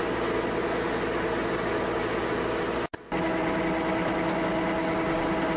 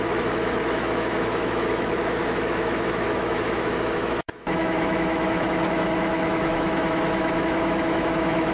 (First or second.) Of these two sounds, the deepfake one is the second